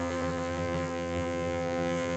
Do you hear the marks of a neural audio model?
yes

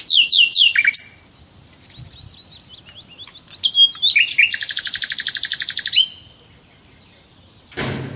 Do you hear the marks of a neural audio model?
no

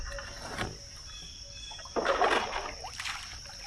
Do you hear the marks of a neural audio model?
no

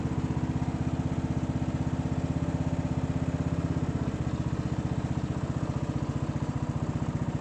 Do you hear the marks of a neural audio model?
no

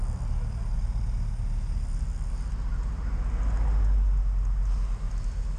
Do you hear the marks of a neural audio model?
no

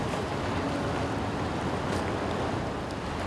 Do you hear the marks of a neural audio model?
no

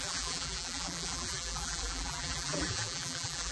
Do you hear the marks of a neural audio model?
yes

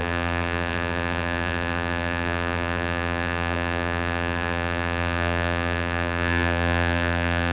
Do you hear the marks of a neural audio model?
yes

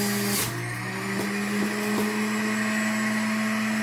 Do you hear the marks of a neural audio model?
no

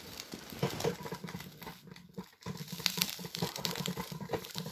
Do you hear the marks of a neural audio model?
no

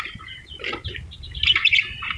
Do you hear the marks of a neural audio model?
yes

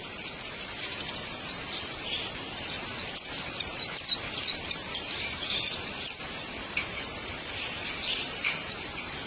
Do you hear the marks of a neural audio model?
yes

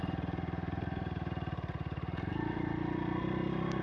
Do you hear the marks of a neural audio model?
yes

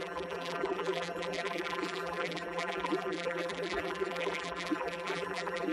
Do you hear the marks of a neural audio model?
yes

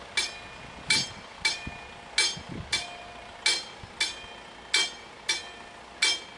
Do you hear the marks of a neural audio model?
no